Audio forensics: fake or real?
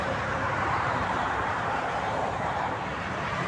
fake